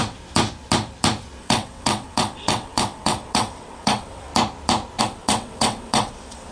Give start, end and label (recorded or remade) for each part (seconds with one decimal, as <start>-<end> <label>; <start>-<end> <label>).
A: 0.0-1.4 recorded; 1.4-4.3 remade; 4.3-5.0 recorded; 5.0-6.5 remade